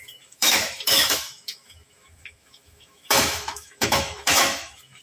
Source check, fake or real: fake